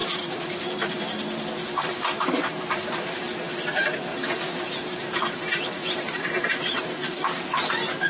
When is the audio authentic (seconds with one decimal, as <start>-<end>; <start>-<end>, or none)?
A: none